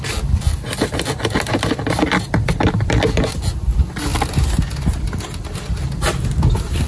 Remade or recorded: recorded